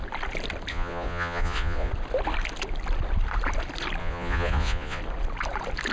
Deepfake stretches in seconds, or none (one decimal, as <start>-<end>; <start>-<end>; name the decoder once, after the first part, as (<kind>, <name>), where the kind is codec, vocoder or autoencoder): 0.7-1.9 (vocoder, Vocos); 4.0-5.0

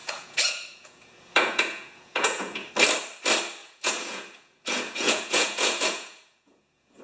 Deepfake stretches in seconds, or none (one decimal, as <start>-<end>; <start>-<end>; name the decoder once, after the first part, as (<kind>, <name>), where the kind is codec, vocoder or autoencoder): 0.0-2.7 (vocoder, Vocos); 3.6-7.0

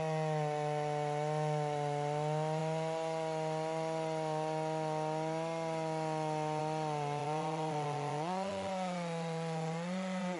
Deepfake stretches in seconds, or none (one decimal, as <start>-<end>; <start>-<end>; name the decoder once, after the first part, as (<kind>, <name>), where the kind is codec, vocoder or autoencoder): 7.2-10.4 (vocoder, Vocos)

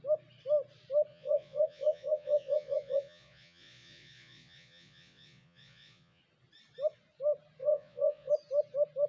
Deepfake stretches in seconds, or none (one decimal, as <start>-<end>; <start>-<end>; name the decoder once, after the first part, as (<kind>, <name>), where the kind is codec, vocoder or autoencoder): 1.1-6.2 (vocoder, Vocos); 7.6-8.3

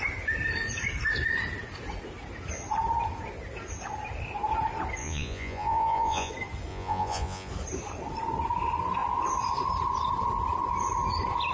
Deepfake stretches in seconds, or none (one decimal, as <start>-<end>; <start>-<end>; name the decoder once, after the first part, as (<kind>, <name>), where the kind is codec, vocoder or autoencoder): 5.0-6.3 (vocoder, Vocos); 6.7-7.5

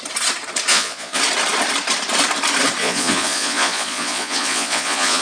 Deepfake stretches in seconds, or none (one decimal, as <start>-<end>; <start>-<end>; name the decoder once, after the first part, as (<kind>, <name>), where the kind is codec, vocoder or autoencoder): 0.7-1.2 (vocoder, Vocos); 2.8-5.2